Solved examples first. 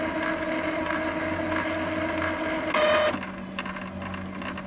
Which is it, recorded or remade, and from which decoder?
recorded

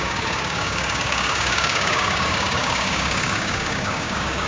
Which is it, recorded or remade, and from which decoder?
remade, codec, DAC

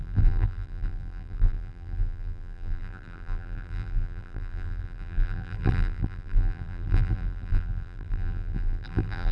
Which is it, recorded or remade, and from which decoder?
remade, vocoder, BigVGAN v2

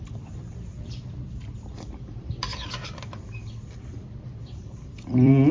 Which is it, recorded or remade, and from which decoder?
remade, vocoder, BigVGAN v2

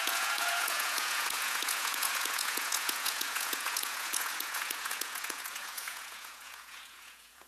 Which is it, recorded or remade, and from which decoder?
remade, vocoder, Vocos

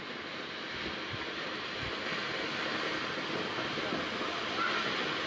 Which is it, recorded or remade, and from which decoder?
recorded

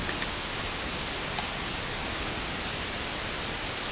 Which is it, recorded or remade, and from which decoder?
recorded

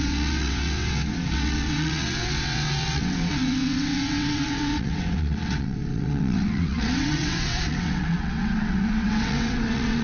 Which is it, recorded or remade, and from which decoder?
remade, vocoder, WaveNeXt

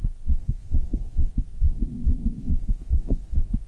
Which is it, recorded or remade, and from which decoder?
remade, codec, SNAC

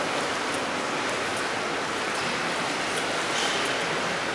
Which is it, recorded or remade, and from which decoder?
recorded